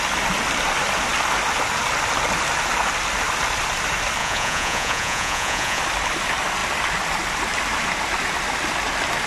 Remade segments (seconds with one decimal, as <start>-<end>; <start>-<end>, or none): 4.2-5.8

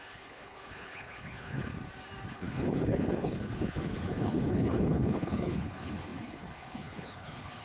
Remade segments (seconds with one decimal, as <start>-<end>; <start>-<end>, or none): 0.0-1.7; 2.3-7.6

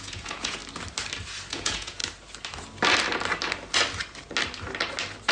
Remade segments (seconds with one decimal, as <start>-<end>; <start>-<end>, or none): 0.0-0.6; 1.5-2.0